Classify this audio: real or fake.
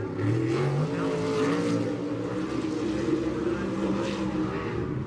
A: real